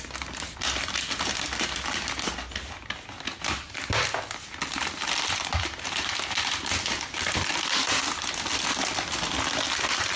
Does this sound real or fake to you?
real